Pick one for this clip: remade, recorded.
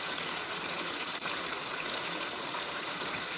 remade